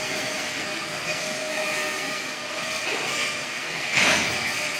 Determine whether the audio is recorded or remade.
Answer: remade